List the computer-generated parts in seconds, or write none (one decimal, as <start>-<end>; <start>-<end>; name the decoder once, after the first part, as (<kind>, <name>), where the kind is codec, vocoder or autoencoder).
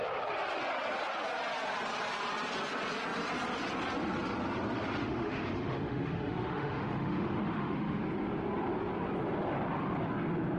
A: 5.0-8.0 (autoencoder, DAC-VAE)